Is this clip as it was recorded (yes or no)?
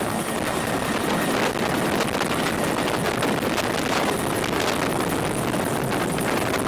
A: yes